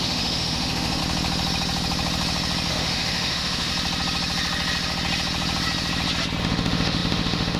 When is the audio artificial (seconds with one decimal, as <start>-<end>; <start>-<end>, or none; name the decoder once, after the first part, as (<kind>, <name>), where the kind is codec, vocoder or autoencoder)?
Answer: 0.0-1.0 (autoencoder, DAC-VAE); 2.7-3.7; 6.4-7.6